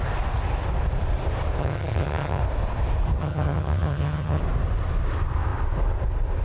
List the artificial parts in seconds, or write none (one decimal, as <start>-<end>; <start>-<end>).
1.6-2.4; 3.2-4.4

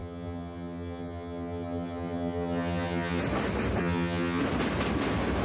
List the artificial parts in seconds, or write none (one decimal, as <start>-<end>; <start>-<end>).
0.0-3.2; 3.8-4.4

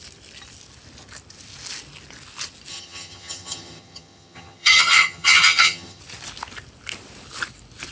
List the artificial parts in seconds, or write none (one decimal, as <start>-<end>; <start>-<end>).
2.7-6.0

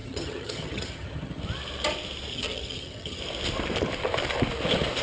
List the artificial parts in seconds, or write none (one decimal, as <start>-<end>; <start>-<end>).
0.0-1.4; 2.3-3.2

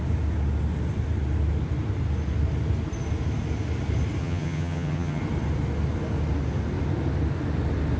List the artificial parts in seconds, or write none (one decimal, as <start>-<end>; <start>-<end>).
4.2-5.2

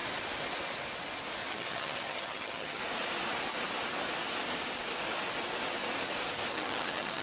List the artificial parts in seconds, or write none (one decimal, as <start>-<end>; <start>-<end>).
1.5-2.8; 6.5-7.2

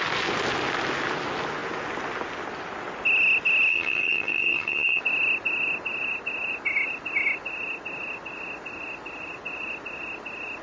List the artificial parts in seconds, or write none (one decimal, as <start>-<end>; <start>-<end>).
3.7-5.0